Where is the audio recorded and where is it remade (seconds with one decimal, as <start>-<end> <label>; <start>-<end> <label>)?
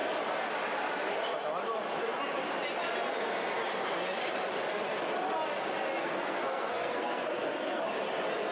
0.0-6.0 recorded; 6.0-7.8 remade; 7.8-8.5 recorded